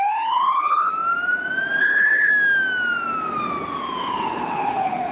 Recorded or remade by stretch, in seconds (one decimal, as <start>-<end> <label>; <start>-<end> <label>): 0.0-0.9 remade; 0.9-1.8 recorded; 1.8-2.3 remade; 2.3-4.0 recorded; 4.0-5.1 remade